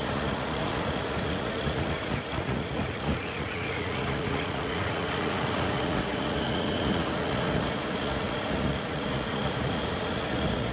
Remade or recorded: remade